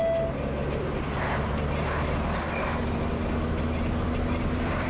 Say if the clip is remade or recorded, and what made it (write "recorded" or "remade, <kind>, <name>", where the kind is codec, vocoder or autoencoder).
recorded